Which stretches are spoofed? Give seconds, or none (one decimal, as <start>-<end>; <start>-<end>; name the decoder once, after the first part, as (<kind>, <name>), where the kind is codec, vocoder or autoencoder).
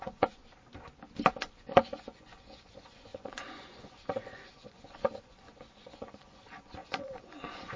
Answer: 0.0-0.4 (vocoder, Vocos); 1.3-7.8